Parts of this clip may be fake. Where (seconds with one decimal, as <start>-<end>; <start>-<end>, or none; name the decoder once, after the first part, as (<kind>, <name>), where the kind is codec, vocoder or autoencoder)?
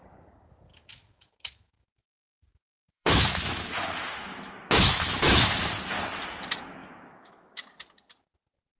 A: 0.7-5.6 (autoencoder, DAC-VAE); 6.8-7.6